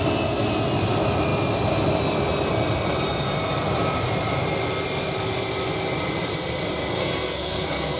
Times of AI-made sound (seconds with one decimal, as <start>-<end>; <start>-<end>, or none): 7.0-8.0